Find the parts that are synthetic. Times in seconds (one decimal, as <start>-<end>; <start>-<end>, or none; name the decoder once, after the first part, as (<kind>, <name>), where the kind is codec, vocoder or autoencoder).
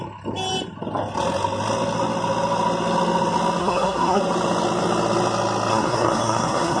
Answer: 3.6-4.2 (codec, SNAC); 5.7-6.8